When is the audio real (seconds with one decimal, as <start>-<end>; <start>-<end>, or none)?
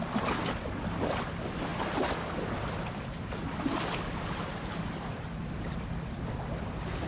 0.0-7.1